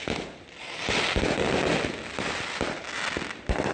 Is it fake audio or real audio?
real